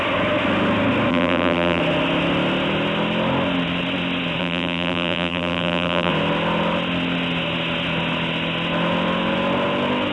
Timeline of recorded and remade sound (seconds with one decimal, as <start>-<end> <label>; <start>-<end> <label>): 0.0-1.1 recorded; 1.1-1.8 remade; 1.8-4.4 recorded; 4.4-6.1 remade; 6.1-10.1 recorded